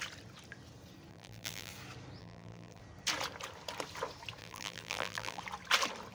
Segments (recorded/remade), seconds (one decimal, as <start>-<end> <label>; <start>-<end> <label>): 0.0-1.1 recorded; 1.1-1.7 remade; 1.7-2.2 recorded; 2.2-2.8 remade; 2.8-4.4 recorded; 4.4-5.4 remade; 5.4-6.1 recorded